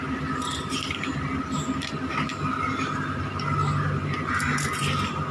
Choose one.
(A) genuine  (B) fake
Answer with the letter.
A